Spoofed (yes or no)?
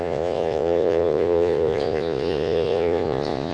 yes